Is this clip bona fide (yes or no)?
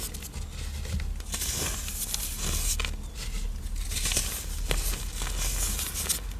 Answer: yes